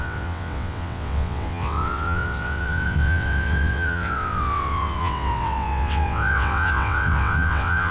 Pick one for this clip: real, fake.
fake